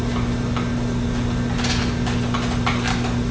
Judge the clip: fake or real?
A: real